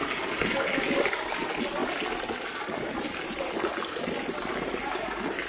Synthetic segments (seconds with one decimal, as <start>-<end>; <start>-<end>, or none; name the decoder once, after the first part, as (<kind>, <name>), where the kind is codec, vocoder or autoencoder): none